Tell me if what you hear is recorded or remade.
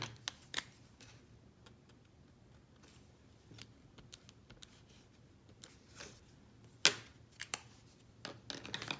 recorded